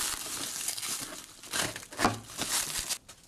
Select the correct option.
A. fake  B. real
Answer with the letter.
B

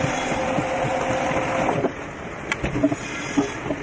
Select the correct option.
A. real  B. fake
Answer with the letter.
A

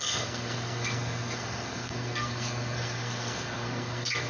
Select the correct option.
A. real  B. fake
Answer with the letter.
B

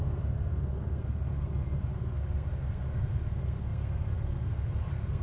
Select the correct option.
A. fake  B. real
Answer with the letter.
A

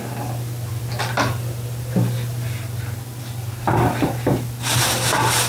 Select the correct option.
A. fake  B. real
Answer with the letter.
B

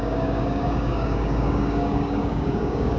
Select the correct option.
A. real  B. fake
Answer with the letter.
B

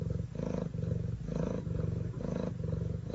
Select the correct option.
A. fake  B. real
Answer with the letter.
B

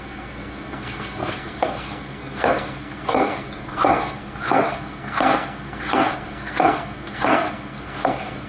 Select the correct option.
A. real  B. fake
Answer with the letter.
B